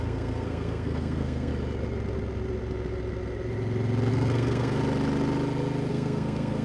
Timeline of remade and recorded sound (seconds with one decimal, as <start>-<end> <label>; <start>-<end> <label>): 0.0-1.5 remade; 1.5-4.1 recorded; 4.1-4.8 remade; 4.8-5.9 recorded; 5.9-6.6 remade